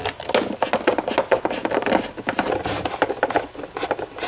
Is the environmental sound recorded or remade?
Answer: recorded